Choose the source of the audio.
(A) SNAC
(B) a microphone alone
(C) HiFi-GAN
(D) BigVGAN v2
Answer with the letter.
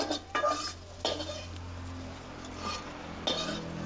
B